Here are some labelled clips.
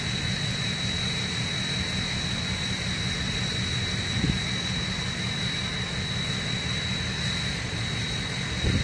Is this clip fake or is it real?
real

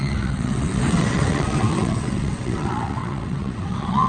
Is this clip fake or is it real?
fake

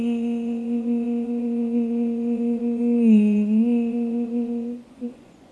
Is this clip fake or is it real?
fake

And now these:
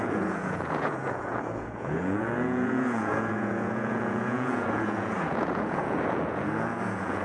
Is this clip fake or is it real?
fake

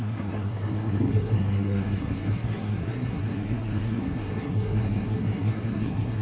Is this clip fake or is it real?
fake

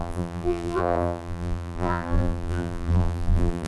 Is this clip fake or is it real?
fake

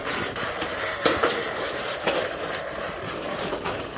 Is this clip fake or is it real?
fake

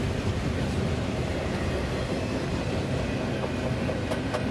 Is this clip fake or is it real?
real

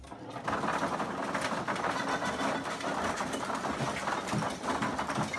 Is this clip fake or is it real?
real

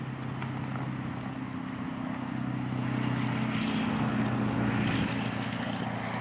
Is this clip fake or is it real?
real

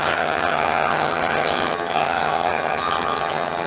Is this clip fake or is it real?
fake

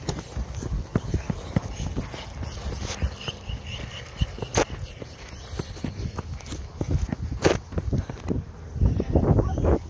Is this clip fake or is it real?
real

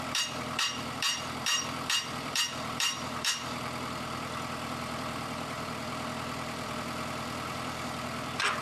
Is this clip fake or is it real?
fake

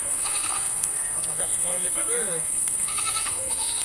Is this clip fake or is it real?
fake